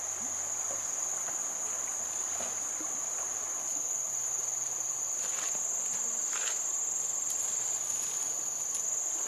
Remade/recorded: recorded